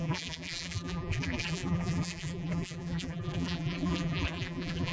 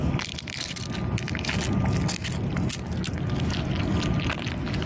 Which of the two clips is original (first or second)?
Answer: second